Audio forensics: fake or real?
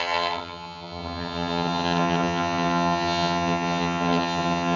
fake